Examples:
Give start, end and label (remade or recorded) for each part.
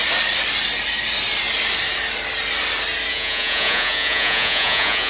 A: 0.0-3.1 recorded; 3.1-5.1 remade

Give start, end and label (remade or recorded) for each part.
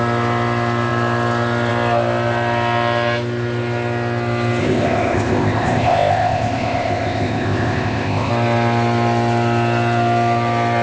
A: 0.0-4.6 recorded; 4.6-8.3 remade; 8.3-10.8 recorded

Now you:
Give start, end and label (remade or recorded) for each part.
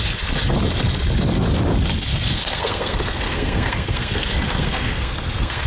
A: 0.0-2.1 recorded; 2.1-5.7 remade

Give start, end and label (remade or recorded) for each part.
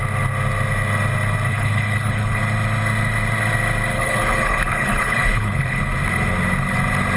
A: 0.0-1.5 recorded; 1.5-2.4 remade; 2.4-3.9 recorded; 3.9-5.8 remade; 5.8-7.2 recorded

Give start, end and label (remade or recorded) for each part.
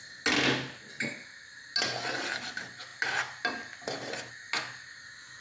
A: 0.0-5.4 recorded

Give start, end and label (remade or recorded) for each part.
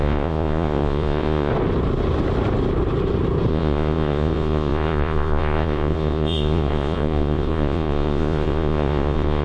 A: 0.0-1.5 remade; 1.5-3.5 recorded; 3.5-9.4 remade